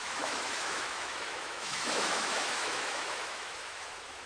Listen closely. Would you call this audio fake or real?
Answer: fake